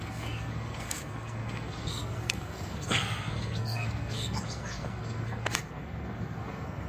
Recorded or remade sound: remade